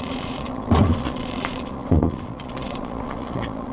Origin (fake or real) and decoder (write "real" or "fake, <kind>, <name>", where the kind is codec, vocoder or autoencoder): fake, vocoder, Vocos